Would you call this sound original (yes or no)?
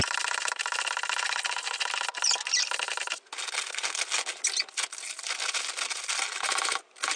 yes